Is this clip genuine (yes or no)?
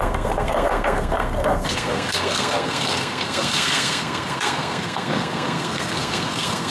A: no